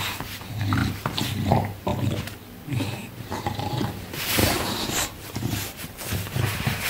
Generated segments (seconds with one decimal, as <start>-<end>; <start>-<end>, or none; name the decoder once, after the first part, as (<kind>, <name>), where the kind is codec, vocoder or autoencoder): 0.0-0.8 (vocoder, BigVGAN v2); 1.5-1.9; 3.2-6.9